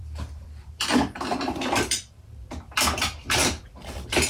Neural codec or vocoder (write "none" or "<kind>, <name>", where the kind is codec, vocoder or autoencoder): vocoder, BigVGAN v2